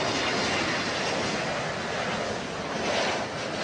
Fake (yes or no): no